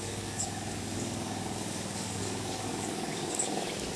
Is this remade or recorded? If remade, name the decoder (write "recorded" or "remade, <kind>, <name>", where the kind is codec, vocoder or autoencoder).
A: remade, codec, DAC